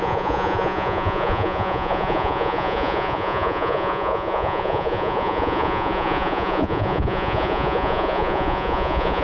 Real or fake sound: fake